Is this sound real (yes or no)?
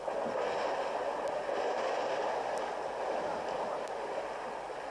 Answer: yes